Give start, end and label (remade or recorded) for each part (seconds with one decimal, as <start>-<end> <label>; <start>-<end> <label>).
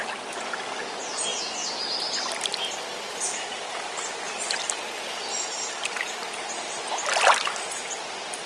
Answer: 0.0-8.5 recorded